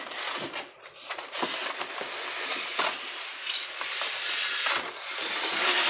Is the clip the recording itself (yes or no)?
yes